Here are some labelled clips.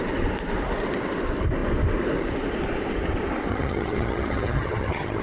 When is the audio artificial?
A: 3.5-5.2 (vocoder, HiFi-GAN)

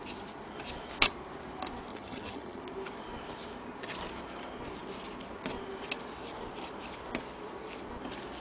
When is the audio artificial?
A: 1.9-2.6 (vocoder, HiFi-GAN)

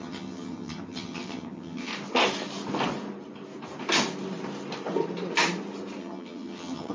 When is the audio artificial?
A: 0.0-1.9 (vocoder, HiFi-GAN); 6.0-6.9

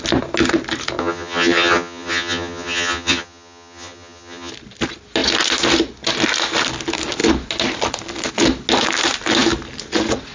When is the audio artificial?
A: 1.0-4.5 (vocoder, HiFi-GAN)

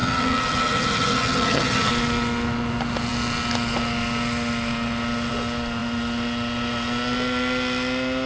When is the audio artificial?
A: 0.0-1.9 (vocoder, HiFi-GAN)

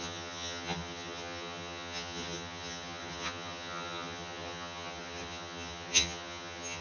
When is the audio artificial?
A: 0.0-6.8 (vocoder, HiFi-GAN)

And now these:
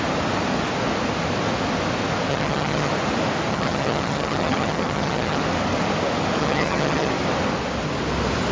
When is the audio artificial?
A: 2.3-2.9 (vocoder, HiFi-GAN); 3.5-5.4; 6.4-7.1